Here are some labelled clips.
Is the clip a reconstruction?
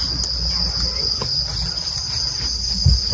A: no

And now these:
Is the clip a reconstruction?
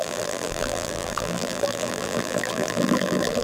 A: yes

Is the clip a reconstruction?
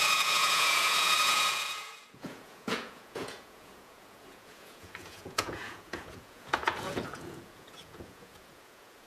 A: yes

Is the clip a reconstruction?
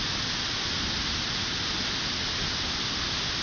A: no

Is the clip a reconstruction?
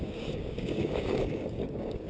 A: yes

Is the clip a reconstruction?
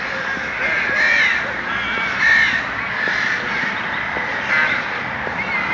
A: no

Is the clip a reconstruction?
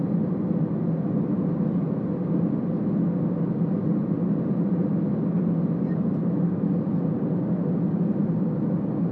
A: no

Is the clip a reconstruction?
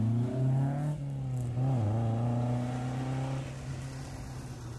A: no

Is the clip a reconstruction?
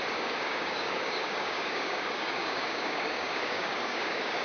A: yes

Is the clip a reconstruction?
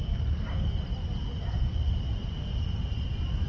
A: no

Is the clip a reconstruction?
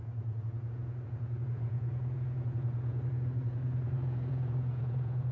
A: yes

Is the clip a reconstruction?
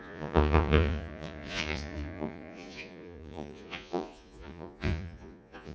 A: yes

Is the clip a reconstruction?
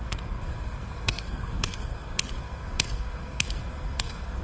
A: yes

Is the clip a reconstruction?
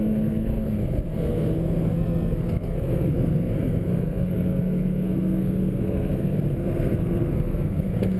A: yes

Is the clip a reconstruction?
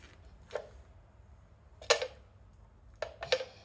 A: no